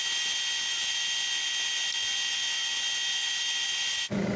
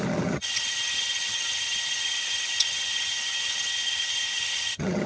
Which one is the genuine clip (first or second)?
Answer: first